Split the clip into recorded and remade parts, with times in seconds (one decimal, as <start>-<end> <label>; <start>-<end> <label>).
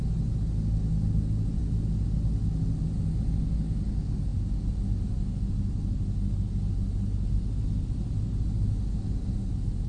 0.0-9.9 recorded